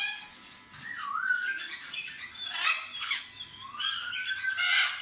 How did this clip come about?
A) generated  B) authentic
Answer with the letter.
B